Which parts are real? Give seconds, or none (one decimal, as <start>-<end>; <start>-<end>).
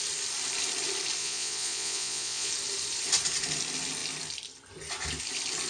0.0-1.2; 2.5-5.7